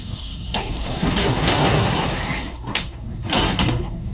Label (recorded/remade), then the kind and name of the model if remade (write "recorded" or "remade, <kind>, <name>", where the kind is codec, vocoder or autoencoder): remade, codec, SNAC